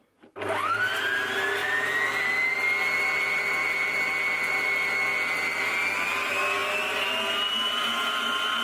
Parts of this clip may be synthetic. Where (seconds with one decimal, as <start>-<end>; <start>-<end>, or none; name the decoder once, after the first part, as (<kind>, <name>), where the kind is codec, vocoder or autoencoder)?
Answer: none